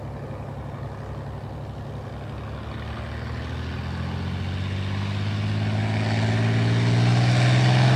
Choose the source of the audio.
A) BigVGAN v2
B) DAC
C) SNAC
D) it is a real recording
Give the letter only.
D